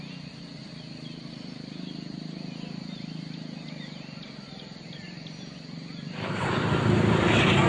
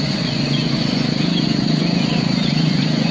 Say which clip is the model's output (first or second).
second